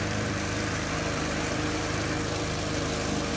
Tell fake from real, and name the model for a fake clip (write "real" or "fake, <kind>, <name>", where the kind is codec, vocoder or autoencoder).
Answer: fake, vocoder, BigVGAN v2